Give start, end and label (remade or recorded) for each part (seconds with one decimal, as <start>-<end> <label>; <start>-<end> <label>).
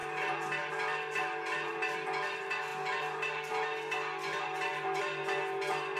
0.0-6.0 recorded